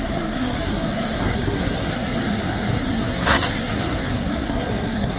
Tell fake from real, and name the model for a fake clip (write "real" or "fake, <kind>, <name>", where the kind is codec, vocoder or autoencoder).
fake, codec, SNAC